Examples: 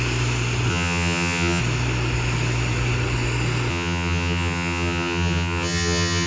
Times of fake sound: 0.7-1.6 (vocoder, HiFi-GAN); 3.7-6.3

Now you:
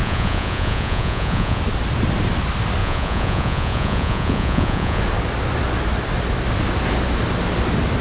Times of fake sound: 0.0-1.6 (vocoder, Vocos); 2.8-5.0

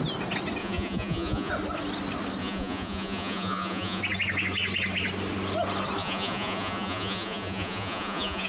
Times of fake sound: 0.6-1.5 (vocoder, Vocos); 2.4-4.0; 6.0-8.5

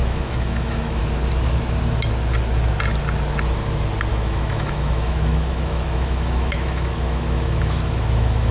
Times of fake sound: 0.0-1.0 (autoencoder, DAC-VAE); 4.1-8.5

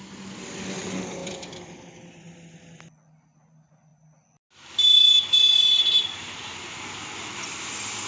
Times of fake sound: 1.2-2.3 (vocoder, BigVGAN v2)

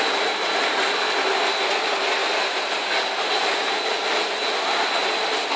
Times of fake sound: none

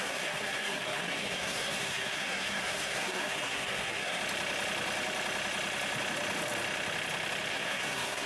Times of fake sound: 0.0-4.2 (codec, SNAC); 7.5-8.3

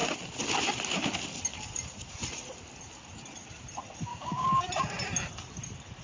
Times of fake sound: 4.1-4.7 (codec, DAC)